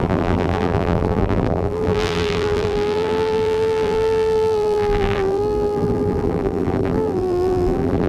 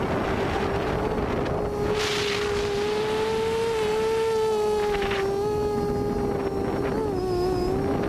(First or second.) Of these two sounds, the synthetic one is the first